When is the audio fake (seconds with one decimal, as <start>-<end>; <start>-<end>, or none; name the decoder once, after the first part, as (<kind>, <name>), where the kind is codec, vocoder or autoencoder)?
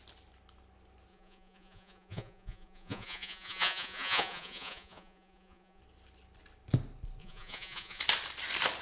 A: 1.1-5.8 (vocoder, Vocos); 7.2-8.0